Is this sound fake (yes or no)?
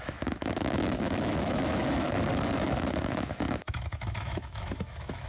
yes